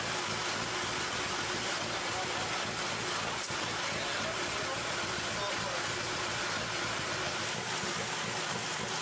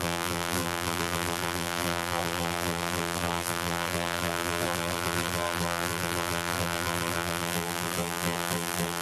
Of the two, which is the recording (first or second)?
first